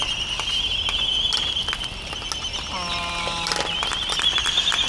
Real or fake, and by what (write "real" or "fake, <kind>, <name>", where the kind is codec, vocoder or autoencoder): real